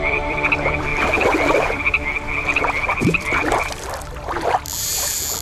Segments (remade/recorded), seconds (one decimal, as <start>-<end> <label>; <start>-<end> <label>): 0.0-5.4 remade